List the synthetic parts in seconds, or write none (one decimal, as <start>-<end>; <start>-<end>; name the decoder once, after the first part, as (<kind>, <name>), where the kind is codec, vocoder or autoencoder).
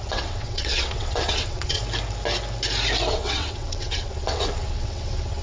0.0-1.8 (vocoder, WaveNeXt); 3.1-5.4